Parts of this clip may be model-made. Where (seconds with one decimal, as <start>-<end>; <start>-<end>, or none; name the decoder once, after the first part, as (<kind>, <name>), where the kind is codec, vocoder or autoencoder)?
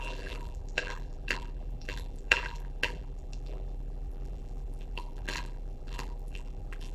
0.0-6.9 (vocoder, BigVGAN v2)